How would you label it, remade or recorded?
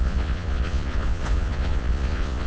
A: remade